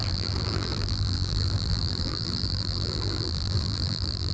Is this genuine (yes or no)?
no